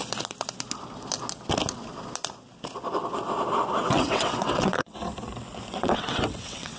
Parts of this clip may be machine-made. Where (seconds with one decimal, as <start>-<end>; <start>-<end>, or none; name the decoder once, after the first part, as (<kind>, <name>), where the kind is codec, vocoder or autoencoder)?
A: 3.7-5.1 (vocoder, WaveNeXt); 5.7-6.8